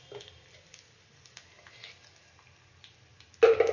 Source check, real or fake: real